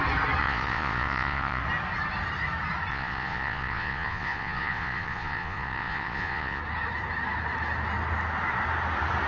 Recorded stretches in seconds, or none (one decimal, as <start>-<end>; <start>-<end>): 0.0-0.4; 1.6-2.9; 6.6-9.3